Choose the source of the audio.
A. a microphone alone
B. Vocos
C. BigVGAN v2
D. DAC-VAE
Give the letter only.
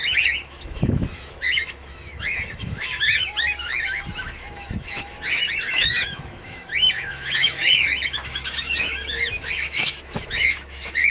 D